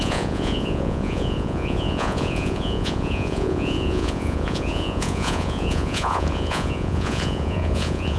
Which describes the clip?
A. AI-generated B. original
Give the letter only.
A